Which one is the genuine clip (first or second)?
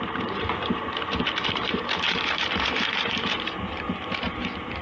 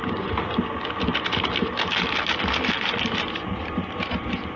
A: second